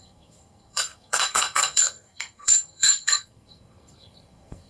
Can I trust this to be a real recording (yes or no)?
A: no